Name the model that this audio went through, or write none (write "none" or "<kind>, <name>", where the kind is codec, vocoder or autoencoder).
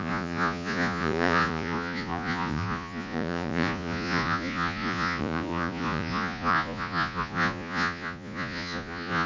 vocoder, Vocos